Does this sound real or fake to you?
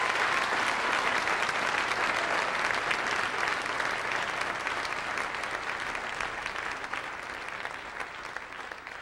real